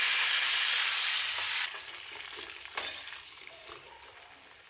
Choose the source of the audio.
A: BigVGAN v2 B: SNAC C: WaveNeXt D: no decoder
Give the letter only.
D